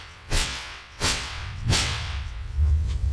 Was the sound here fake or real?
fake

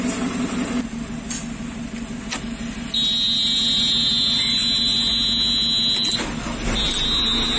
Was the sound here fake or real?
real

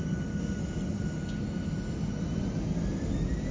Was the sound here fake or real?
real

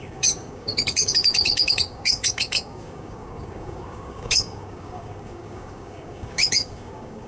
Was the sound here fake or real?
fake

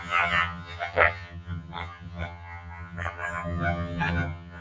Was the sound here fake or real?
fake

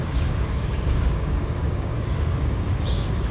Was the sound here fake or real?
fake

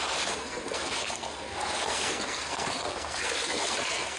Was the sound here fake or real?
fake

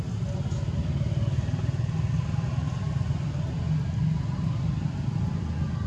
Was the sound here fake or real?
real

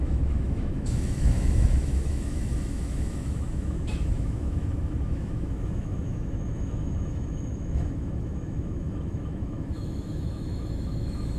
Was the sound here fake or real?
fake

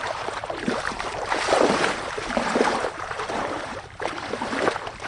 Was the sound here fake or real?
fake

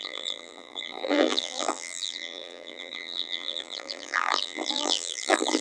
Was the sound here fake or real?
fake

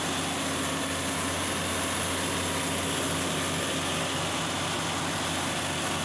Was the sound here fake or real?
real